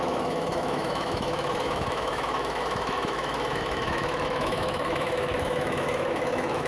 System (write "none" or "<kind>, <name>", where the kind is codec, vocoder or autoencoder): autoencoder, DAC-VAE